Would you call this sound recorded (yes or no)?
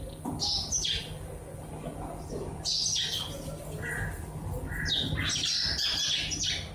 yes